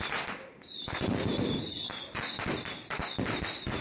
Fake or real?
real